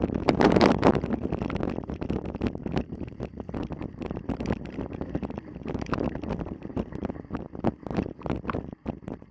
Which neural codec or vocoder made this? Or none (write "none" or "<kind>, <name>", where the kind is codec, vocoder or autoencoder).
vocoder, BigVGAN v2